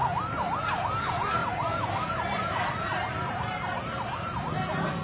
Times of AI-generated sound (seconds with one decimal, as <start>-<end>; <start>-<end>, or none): 1.4-4.4